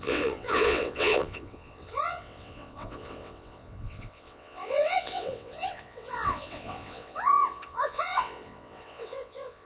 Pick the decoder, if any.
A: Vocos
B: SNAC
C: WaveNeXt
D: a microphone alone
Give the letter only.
C